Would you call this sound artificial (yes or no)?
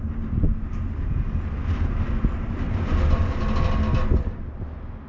no